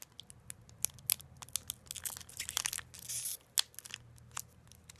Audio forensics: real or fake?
real